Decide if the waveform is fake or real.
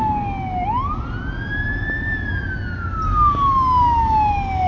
real